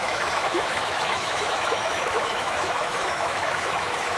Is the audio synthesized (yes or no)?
yes